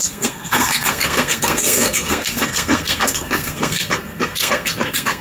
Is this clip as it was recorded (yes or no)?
no